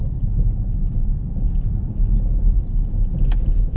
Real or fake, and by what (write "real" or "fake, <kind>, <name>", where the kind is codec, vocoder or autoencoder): real